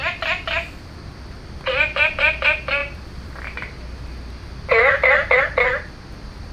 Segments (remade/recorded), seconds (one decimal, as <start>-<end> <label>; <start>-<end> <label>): 0.0-6.5 recorded